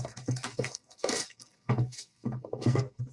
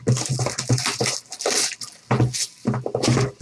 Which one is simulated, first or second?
first